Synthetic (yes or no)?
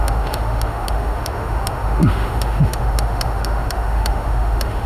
yes